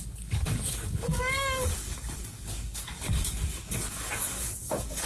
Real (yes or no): no